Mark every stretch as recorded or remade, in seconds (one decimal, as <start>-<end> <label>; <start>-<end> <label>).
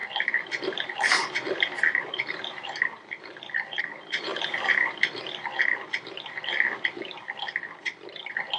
0.0-8.6 remade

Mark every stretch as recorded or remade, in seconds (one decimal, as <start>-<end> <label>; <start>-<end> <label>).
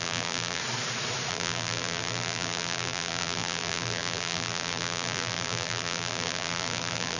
0.0-0.6 remade; 0.6-1.3 recorded; 1.3-7.2 remade